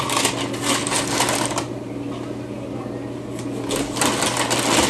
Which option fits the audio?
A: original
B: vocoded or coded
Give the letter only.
A